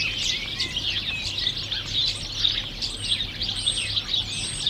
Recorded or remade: recorded